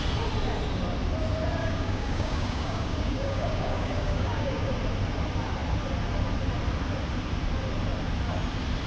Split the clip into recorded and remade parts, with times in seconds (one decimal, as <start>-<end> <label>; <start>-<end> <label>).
0.0-1.6 recorded; 1.6-4.7 remade; 4.7-8.9 recorded